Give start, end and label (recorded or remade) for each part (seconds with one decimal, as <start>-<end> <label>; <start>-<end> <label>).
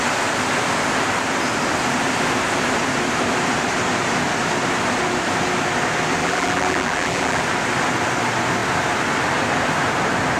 0.0-6.2 recorded; 6.2-7.4 remade; 7.4-10.4 recorded